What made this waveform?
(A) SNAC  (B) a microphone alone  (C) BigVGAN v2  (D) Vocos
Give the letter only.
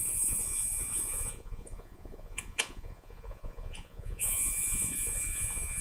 D